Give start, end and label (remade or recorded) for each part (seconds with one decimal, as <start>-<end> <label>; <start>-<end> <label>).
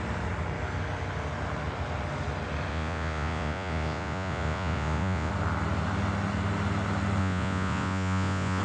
0.0-2.7 recorded; 2.7-5.3 remade; 5.3-7.2 recorded; 7.2-8.6 remade